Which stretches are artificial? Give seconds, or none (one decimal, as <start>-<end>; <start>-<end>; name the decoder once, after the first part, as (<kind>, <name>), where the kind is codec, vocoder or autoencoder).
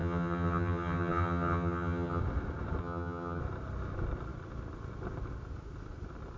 0.0-2.2 (vocoder, HiFi-GAN); 2.8-3.4